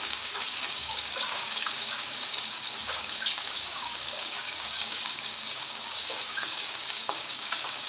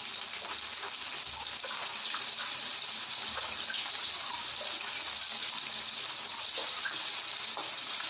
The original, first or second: second